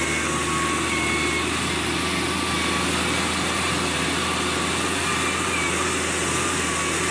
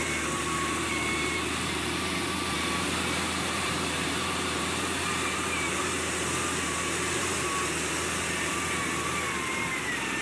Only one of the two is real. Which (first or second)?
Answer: first